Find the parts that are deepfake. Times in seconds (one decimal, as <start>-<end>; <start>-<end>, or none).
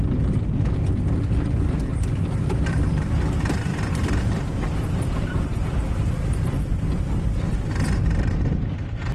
1.9-2.8; 3.7-7.0